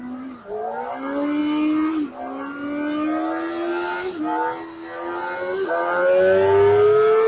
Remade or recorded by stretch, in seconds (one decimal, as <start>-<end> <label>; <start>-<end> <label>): 0.0-7.3 recorded